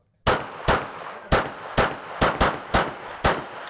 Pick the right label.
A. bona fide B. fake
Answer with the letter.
A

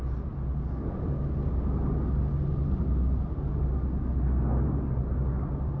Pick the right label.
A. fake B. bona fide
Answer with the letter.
B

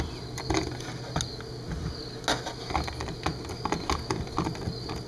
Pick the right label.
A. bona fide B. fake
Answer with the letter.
A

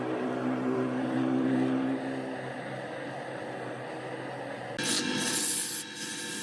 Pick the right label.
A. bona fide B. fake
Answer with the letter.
A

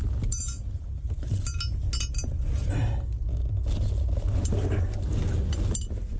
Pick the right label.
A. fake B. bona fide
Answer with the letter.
B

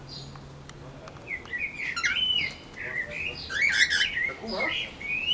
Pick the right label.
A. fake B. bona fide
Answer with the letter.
B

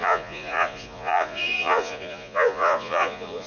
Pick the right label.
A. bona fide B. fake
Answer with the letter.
B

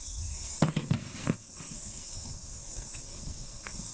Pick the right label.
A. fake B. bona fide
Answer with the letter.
A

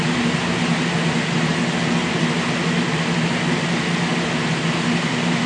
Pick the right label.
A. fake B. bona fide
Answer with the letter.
B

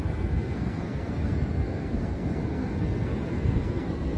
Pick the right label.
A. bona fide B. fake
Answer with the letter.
B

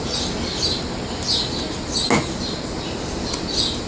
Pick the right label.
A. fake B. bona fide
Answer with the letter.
B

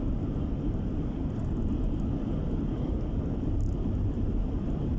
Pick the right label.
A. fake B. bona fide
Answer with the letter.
A